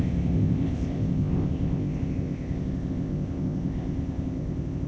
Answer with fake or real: fake